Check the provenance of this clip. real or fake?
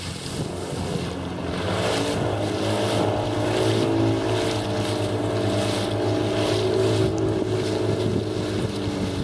real